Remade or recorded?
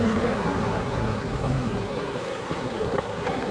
remade